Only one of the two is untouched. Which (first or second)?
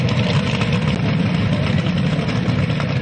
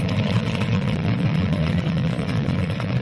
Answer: first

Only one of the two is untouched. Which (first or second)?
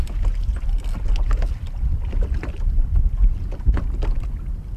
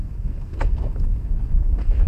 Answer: first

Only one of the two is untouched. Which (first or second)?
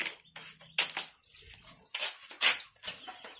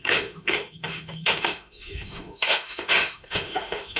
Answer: first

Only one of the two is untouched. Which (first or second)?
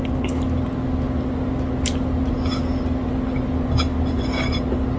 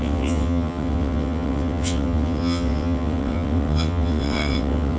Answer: first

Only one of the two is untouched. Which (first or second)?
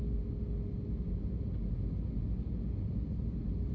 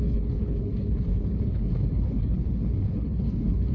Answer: first